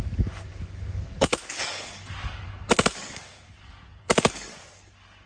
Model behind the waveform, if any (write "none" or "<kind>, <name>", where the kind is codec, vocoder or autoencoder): codec, DAC